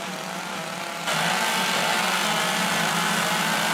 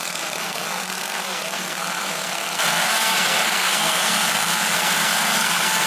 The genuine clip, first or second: first